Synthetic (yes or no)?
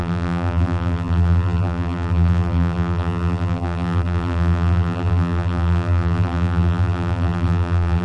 yes